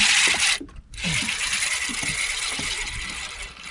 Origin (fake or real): real